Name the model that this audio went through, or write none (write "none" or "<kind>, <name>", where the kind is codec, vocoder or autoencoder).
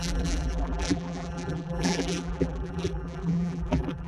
vocoder, BigVGAN v2